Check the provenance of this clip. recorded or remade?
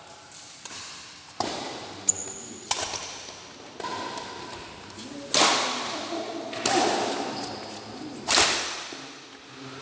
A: recorded